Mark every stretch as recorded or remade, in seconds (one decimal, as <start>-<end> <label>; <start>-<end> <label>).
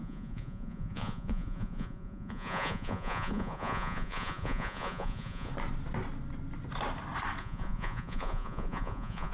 0.0-5.5 remade; 5.5-7.4 recorded; 7.4-9.3 remade